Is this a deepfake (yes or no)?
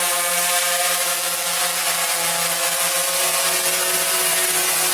no